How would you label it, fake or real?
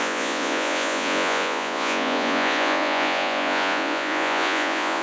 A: fake